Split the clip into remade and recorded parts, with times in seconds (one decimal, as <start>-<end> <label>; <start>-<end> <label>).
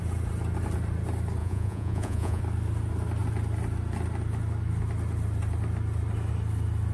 0.0-1.4 recorded; 1.4-2.4 remade; 2.4-6.9 recorded